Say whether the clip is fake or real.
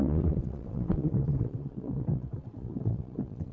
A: fake